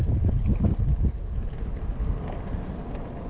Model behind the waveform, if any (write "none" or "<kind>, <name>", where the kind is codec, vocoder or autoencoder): none